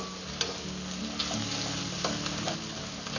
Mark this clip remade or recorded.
recorded